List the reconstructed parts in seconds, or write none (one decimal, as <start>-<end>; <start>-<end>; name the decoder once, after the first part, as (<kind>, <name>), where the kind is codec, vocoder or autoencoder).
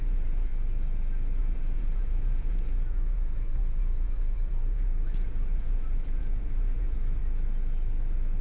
0.0-0.5 (vocoder, Vocos); 1.4-7.2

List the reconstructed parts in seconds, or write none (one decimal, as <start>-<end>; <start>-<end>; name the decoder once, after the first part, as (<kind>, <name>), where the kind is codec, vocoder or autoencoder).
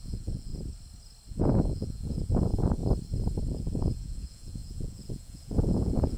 0.0-0.5 (vocoder, Vocos); 1.3-2.8; 3.5-6.2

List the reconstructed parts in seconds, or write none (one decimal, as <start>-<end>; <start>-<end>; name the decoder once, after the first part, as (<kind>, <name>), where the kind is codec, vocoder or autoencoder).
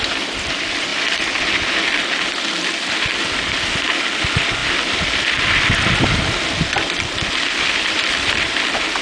none